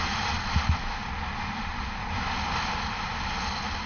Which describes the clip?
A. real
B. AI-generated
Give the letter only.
A